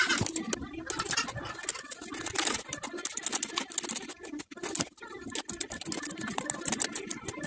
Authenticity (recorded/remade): recorded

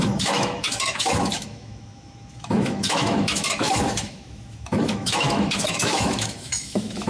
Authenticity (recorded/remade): remade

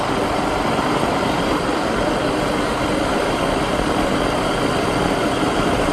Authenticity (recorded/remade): recorded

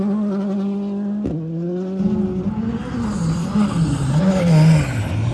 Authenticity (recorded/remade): recorded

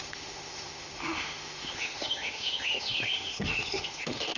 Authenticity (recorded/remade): remade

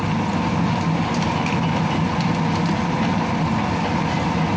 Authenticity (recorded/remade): recorded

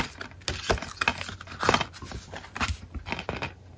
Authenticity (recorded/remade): recorded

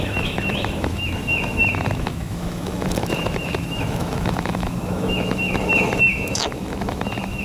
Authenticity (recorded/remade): remade